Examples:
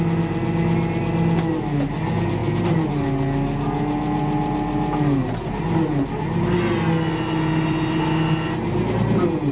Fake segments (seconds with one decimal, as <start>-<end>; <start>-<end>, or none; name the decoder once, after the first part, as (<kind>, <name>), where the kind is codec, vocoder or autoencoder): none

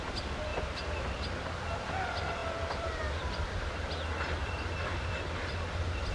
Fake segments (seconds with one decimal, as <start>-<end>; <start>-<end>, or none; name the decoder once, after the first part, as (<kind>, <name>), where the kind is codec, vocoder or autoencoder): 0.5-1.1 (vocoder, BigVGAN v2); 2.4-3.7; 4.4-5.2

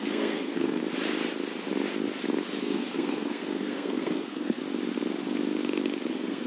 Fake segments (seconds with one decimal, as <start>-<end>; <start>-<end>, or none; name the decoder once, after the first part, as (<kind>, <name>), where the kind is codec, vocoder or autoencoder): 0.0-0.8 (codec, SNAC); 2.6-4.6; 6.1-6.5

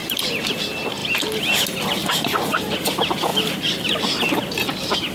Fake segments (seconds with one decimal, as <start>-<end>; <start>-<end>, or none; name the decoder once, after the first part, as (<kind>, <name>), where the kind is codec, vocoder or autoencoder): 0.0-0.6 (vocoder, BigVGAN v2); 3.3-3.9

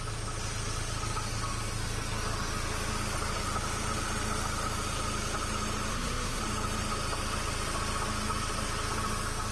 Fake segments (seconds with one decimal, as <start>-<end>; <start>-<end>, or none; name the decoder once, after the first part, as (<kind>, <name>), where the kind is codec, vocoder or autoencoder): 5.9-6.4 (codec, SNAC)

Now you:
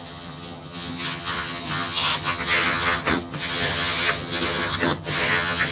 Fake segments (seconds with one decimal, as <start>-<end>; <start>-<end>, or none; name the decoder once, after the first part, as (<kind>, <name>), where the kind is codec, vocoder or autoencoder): 0.0-5.7 (vocoder, HiFi-GAN)

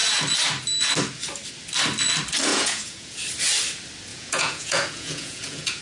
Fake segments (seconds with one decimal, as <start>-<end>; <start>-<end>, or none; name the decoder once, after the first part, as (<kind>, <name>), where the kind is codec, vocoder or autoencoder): 2.5-3.2 (vocoder, Vocos); 4.1-5.8

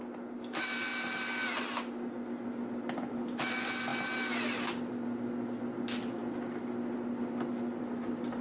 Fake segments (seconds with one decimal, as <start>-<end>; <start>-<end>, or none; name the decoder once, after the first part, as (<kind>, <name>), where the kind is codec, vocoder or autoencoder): none